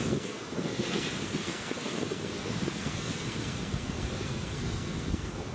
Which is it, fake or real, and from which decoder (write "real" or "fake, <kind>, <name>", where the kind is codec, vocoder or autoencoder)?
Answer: fake, codec, SNAC